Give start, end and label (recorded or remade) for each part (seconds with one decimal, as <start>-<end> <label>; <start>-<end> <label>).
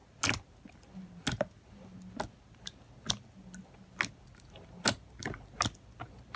0.0-6.4 recorded